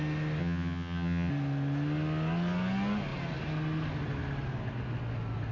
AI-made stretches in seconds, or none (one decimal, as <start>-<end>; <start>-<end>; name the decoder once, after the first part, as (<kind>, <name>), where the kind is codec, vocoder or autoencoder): 0.4-1.3 (vocoder, HiFi-GAN)